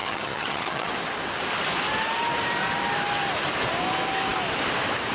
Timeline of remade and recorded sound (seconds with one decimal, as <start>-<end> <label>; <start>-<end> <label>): 0.0-0.9 remade; 0.9-5.1 recorded